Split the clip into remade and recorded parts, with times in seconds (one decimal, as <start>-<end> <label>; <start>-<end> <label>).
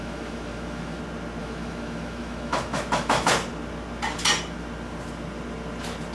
0.0-1.0 remade; 1.0-1.4 recorded; 1.4-3.3 remade; 3.3-6.1 recorded